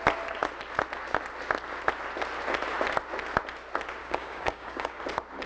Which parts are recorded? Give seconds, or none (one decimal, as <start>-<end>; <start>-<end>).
0.0-4.0; 5.0-5.5